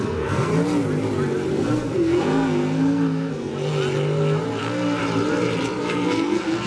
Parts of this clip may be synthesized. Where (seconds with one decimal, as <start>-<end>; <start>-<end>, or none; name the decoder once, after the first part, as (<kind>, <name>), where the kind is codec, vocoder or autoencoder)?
0.0-0.5 (codec, SNAC); 1.5-3.5; 4.6-5.0; 5.8-6.7